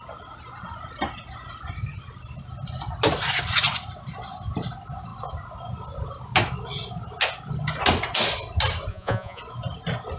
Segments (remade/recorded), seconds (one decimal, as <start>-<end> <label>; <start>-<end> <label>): 0.0-8.9 recorded; 8.9-9.4 remade; 9.4-10.2 recorded

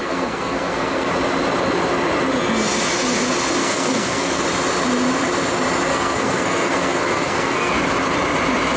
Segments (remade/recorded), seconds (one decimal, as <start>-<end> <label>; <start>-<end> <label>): 0.0-1.1 remade; 1.1-3.6 recorded; 3.6-4.4 remade; 4.4-5.9 recorded; 5.9-7.7 remade; 7.7-8.8 recorded

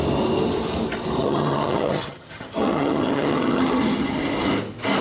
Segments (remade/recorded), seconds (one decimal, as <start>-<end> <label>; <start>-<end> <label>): 0.0-1.2 recorded; 1.2-4.2 remade; 4.2-5.0 recorded